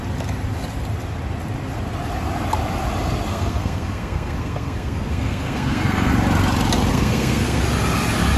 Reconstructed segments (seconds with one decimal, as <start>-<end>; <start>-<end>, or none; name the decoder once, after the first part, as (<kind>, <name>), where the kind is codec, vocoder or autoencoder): 3.3-6.1 (codec, SNAC); 6.9-7.6